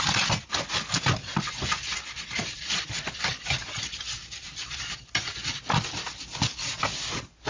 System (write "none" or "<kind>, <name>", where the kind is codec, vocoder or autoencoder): none